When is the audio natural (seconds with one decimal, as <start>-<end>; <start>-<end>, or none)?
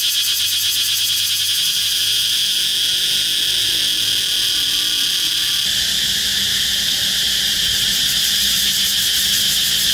0.0-6.5; 7.4-9.9